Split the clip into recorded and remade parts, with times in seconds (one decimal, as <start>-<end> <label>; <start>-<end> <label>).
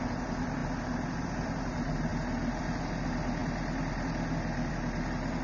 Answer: 0.0-5.4 recorded